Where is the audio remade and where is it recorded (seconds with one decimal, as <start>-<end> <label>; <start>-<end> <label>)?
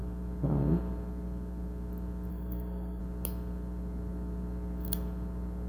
0.0-2.3 recorded; 2.3-3.0 remade; 3.0-5.7 recorded